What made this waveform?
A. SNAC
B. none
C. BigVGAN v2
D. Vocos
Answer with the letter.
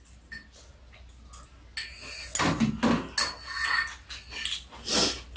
B